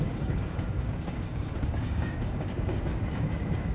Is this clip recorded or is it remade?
remade